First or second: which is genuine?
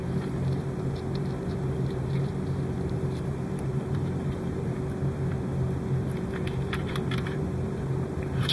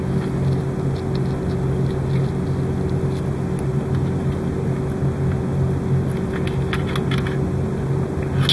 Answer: second